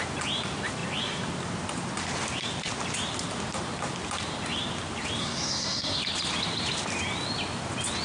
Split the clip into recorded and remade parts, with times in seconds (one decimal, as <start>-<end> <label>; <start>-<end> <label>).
0.0-5.2 recorded; 5.2-6.0 remade; 6.0-8.0 recorded